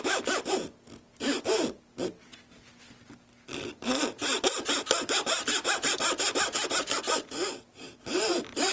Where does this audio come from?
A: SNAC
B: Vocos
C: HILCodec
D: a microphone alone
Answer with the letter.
D